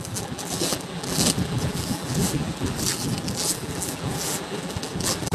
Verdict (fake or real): fake